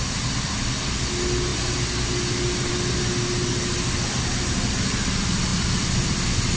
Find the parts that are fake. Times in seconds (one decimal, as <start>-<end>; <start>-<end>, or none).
none